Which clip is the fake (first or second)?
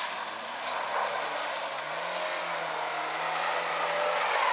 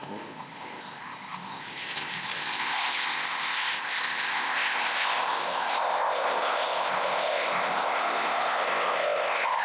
second